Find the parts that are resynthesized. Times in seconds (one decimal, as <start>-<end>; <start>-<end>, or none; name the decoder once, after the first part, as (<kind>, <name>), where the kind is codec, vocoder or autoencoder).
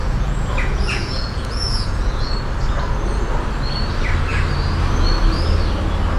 0.0-2.3 (vocoder, Vocos)